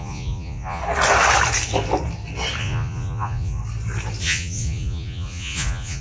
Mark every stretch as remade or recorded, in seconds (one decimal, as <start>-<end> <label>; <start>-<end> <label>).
0.0-0.8 remade; 0.8-2.6 recorded; 2.6-3.6 remade; 3.6-4.2 recorded; 4.2-6.0 remade